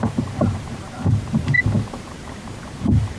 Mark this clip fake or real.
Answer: fake